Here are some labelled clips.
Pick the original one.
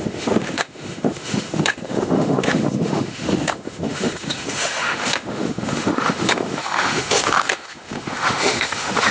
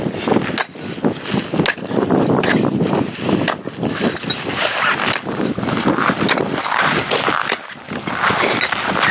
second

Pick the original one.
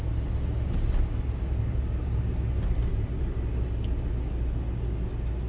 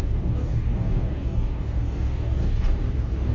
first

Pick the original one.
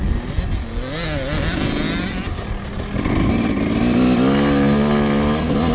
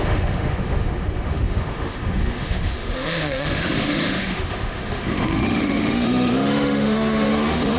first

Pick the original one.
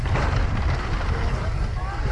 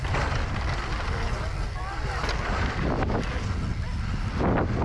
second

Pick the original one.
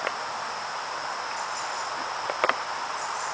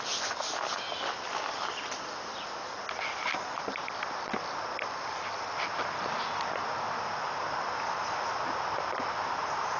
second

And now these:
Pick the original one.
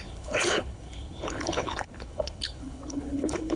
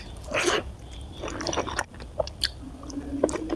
second